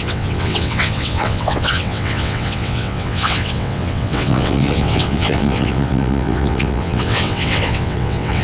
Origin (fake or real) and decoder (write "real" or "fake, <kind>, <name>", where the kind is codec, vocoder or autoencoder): fake, vocoder, WaveNeXt